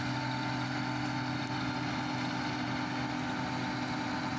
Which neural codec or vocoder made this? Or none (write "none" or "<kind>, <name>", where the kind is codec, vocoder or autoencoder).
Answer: none